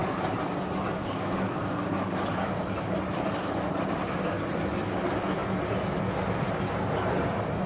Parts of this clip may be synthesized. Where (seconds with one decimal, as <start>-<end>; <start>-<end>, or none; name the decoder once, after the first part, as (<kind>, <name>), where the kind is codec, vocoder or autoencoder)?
1.0-1.6 (codec, DAC)

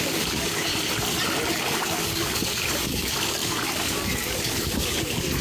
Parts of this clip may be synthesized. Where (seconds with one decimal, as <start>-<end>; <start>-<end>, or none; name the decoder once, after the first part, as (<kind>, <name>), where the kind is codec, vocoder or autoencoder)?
0.0-0.7 (codec, DAC); 1.5-5.4

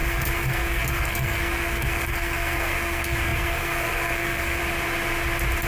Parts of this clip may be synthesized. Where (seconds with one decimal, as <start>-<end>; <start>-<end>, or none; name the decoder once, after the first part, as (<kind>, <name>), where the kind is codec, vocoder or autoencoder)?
0.0-4.6 (codec, SNAC)

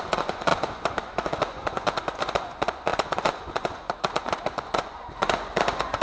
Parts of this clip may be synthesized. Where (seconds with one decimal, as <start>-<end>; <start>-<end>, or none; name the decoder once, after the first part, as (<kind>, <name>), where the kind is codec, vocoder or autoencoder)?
0.0-6.0 (vocoder, Vocos)

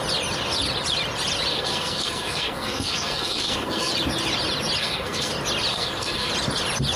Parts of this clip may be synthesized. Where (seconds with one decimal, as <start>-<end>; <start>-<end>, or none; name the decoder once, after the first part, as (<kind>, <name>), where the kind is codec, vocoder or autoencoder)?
1.5-3.9 (codec, SNAC); 4.8-5.3; 5.7-6.3

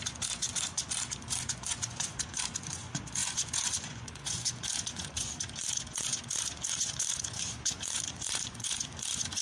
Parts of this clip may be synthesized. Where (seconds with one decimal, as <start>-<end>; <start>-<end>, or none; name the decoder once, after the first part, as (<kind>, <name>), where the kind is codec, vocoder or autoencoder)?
0.0-9.4 (vocoder, Vocos)

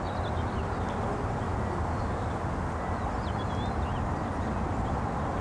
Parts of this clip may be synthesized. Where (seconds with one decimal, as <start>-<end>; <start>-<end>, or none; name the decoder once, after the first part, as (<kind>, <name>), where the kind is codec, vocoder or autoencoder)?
none